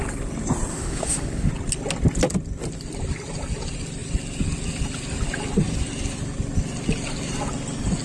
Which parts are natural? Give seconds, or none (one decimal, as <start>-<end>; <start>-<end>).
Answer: 0.0-0.7; 1.5-8.0